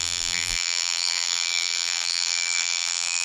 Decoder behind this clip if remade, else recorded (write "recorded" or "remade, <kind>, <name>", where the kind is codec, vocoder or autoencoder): remade, vocoder, BigVGAN v2